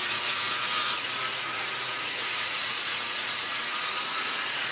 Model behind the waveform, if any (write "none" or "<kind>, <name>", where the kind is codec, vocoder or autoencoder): vocoder, Vocos